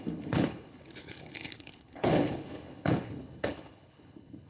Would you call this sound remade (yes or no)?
yes